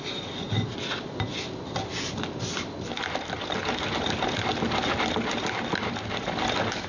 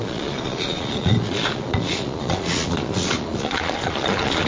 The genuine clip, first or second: first